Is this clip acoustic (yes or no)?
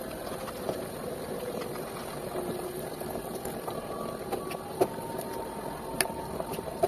yes